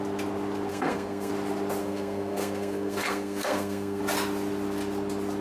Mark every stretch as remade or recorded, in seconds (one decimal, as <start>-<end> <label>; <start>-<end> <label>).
0.0-0.7 recorded; 0.7-1.3 remade; 1.3-1.8 recorded; 1.8-4.0 remade; 4.0-5.4 recorded